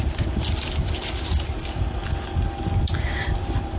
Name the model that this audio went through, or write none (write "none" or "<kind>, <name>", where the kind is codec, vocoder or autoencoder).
none